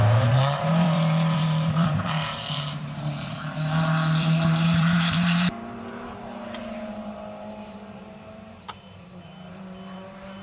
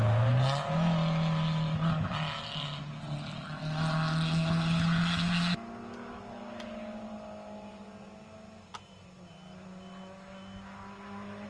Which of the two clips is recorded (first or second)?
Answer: second